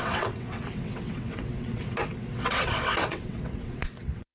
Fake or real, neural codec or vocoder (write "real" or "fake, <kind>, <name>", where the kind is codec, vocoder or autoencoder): fake, vocoder, WaveNeXt